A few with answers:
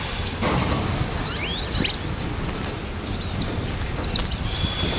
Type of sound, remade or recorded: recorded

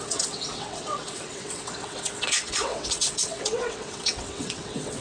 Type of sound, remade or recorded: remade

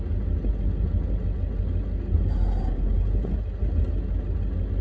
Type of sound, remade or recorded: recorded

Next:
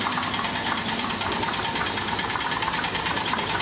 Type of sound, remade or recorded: recorded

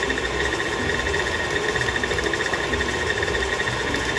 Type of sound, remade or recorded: recorded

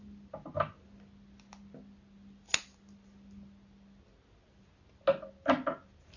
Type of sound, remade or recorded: recorded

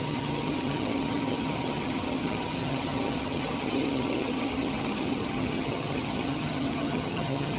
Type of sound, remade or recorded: remade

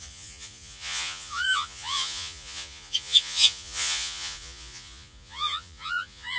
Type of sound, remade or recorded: remade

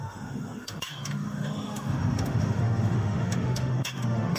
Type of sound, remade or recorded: remade